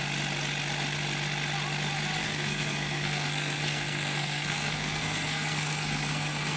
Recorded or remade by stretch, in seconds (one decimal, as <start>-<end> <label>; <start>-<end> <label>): 0.0-2.2 recorded; 2.2-6.6 remade